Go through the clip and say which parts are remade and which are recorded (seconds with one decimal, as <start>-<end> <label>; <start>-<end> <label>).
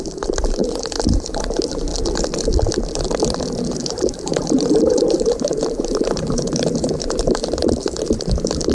0.0-1.9 remade; 1.9-3.6 recorded; 3.6-8.7 remade